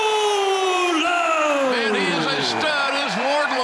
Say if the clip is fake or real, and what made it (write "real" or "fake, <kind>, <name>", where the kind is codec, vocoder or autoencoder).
fake, vocoder, BigVGAN v2